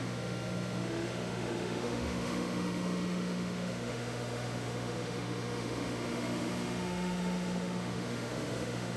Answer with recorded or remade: remade